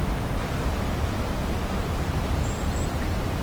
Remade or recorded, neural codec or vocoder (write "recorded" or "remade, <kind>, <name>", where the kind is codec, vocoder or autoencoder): remade, vocoder, BigVGAN v2